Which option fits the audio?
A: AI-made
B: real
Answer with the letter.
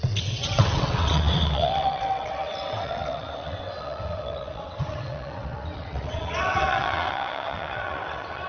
A